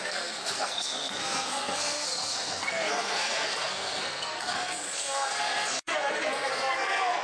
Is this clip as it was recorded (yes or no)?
no